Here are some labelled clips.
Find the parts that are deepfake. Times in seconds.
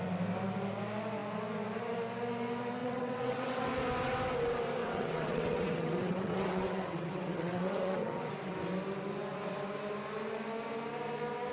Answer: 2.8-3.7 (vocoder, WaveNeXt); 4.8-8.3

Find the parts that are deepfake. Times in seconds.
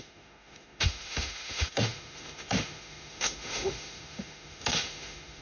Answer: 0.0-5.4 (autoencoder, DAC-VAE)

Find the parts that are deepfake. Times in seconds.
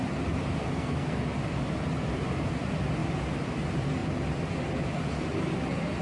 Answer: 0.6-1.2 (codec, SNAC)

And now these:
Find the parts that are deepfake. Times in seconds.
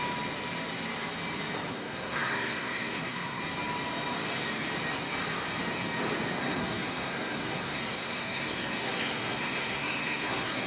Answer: 1.7-3.4 (codec, SNAC); 6.4-10.7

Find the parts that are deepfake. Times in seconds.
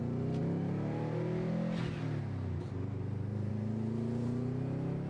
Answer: none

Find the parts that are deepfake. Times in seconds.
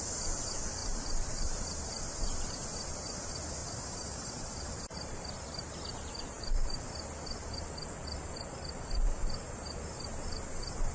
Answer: 0.8-2.5 (vocoder, BigVGAN v2); 3.6-6.8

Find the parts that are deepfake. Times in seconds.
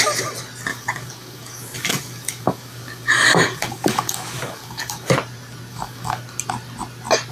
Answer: 0.7-5.1 (codec, DAC); 5.7-6.2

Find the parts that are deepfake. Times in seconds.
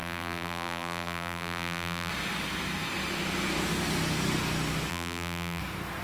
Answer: 0.0-2.1 (vocoder, BigVGAN v2); 4.9-5.6